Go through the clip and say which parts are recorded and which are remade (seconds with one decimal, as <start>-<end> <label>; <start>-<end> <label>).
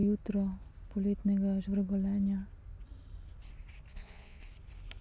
0.0-3.9 recorded; 3.9-4.4 remade; 4.4-5.0 recorded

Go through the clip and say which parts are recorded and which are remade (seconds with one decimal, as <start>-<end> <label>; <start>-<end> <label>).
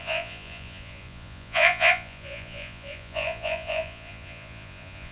0.0-5.1 remade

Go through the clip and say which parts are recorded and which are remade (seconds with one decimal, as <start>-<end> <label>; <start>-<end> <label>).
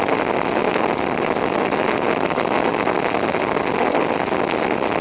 0.0-5.0 recorded